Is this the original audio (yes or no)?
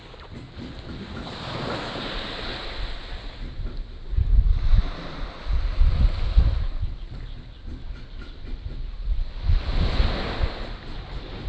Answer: yes